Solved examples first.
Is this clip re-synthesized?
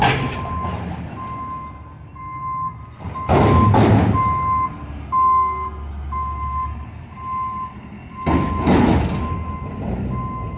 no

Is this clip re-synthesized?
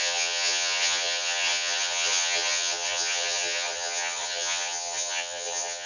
yes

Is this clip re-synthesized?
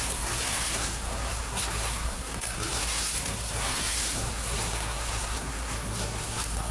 yes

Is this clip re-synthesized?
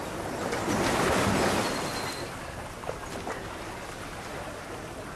no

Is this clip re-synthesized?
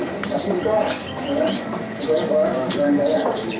yes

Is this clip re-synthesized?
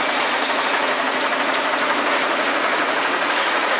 yes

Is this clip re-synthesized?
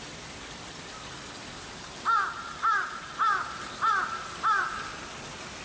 yes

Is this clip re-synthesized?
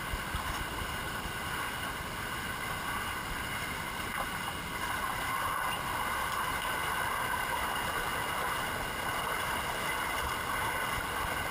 no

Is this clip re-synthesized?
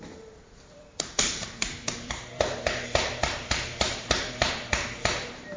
yes